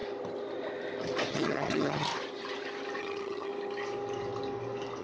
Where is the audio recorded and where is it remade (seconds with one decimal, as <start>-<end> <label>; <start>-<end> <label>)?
0.0-1.3 recorded; 1.3-2.1 remade; 2.1-3.0 recorded; 3.0-3.5 remade; 3.5-5.0 recorded